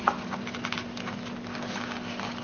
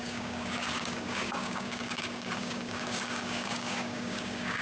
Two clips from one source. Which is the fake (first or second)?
second